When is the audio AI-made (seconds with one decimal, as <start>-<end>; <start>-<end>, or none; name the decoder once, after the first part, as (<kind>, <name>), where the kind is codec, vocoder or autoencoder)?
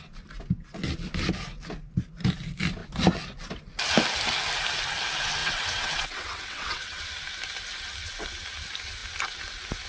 5.4-7.0 (vocoder, WaveNeXt)